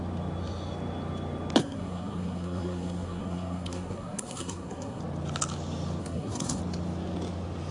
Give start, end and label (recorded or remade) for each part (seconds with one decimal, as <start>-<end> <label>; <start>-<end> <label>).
0.0-1.6 recorded; 1.6-5.0 remade; 5.0-6.0 recorded; 6.0-6.6 remade; 6.6-7.7 recorded